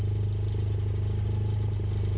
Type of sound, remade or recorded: recorded